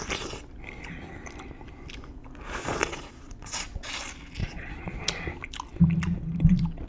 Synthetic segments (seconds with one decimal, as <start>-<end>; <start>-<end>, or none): 2.6-3.9; 4.4-5.0